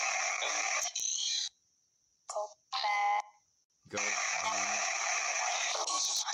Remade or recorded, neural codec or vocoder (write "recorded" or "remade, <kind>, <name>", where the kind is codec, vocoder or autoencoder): recorded